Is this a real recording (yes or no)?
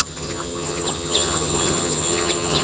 no